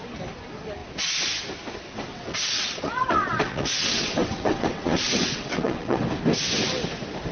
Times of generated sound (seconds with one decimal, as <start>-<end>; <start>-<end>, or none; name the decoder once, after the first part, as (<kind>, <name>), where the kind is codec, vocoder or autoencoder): 2.1-6.0 (vocoder, WaveNeXt)